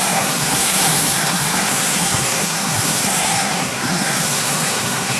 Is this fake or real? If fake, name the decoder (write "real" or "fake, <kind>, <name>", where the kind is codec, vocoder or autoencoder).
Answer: fake, codec, SNAC